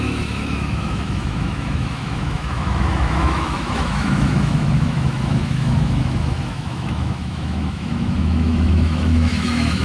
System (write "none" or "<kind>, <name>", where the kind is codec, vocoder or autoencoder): autoencoder, DAC-VAE